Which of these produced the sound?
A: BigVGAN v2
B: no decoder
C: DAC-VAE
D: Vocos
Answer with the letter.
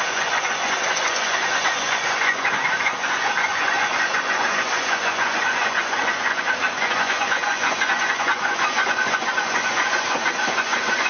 D